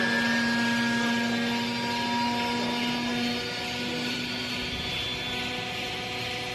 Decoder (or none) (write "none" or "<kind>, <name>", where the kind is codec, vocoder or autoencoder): none